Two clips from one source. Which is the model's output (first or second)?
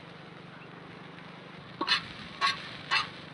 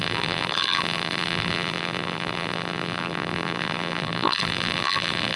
second